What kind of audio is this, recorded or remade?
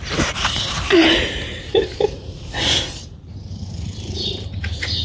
remade